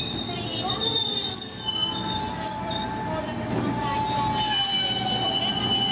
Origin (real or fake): real